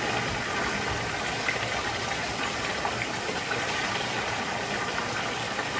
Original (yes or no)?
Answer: yes